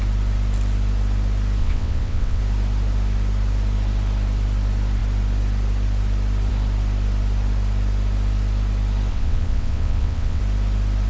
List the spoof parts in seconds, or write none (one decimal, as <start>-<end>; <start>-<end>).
1.6-2.4; 9.1-10.4